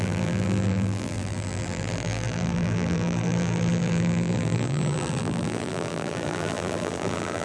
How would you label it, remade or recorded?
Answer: remade